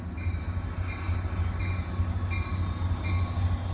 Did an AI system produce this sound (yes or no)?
no